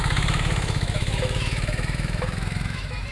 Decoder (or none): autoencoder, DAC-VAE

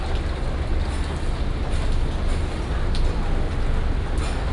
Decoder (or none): none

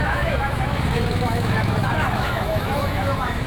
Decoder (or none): autoencoder, DAC-VAE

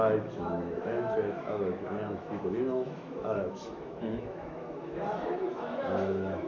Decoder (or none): autoencoder, DAC-VAE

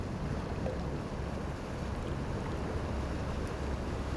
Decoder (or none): none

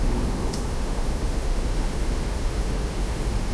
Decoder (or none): autoencoder, DAC-VAE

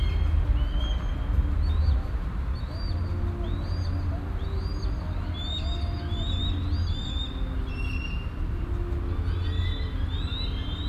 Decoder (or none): none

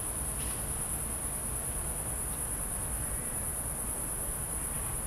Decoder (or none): none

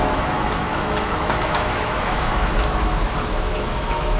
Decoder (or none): autoencoder, DAC-VAE